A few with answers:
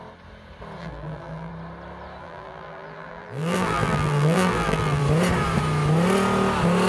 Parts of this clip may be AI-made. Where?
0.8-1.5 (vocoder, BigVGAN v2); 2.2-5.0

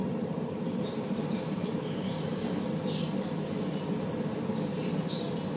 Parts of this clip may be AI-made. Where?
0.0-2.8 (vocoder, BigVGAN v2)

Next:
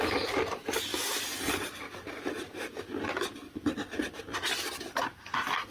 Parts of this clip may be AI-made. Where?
none

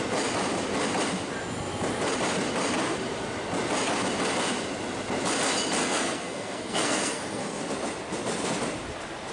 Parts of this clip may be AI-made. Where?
5.8-7.6 (codec, SNAC)